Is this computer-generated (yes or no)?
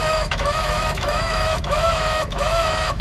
yes